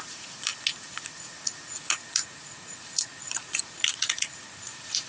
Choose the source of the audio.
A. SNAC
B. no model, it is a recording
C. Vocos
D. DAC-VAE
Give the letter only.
C